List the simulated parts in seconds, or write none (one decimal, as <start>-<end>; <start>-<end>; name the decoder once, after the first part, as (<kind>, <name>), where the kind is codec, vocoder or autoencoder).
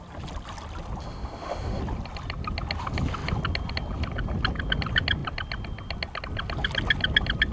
1.0-1.8 (autoencoder, DAC-VAE)